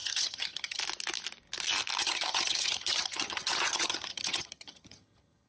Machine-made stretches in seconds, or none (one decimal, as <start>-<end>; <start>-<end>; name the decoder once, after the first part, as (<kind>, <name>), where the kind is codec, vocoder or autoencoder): 0.0-0.8 (vocoder, HiFi-GAN); 2.0-5.5